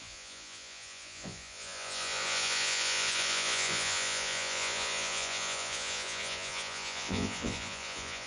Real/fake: fake